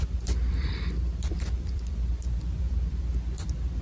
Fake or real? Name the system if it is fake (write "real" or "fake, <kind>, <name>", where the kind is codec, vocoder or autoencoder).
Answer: fake, vocoder, BigVGAN v2